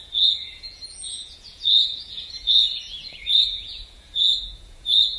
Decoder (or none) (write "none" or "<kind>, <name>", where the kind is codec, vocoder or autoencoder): vocoder, Vocos